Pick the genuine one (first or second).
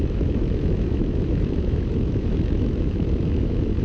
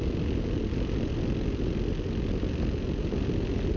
second